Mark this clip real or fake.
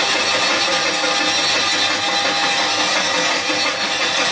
real